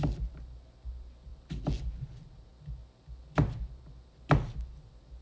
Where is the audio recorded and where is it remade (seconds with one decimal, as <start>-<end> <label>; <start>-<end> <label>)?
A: 0.0-5.2 recorded